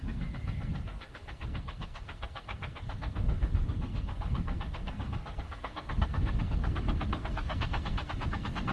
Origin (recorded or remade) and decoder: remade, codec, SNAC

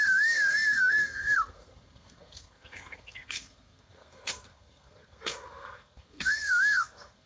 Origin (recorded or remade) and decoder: remade, codec, SNAC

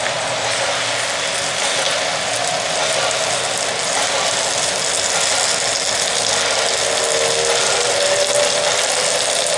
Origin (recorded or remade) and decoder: recorded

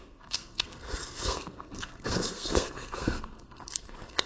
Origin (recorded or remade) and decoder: remade, codec, SNAC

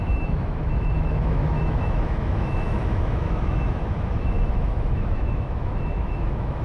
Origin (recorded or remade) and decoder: remade, autoencoder, DAC-VAE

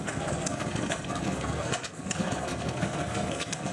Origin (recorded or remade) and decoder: remade, codec, SNAC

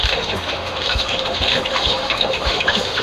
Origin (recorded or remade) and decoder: remade, autoencoder, DAC-VAE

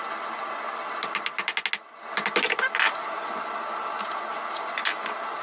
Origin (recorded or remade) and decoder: recorded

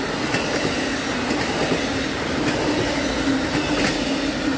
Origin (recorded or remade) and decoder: recorded